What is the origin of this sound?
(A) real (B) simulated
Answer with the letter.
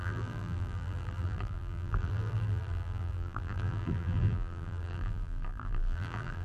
B